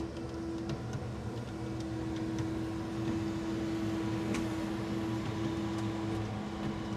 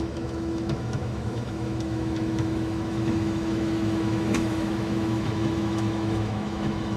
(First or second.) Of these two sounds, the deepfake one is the second